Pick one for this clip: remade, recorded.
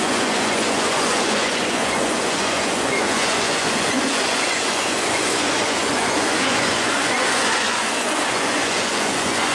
remade